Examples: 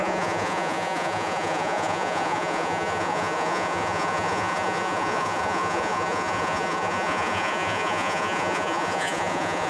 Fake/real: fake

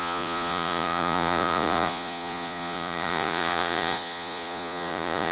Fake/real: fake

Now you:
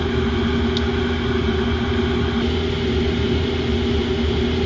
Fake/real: real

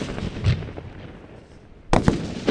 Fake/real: real